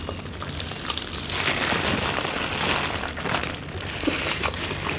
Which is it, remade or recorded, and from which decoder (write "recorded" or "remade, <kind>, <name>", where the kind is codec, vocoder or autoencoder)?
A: recorded